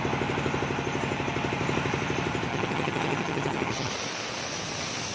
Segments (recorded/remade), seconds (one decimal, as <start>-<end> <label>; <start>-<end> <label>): 0.0-2.5 recorded; 2.5-3.9 remade; 3.9-5.1 recorded